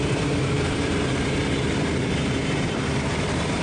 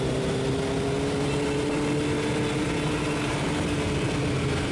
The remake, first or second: first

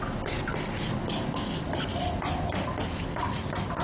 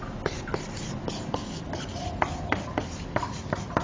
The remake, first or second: second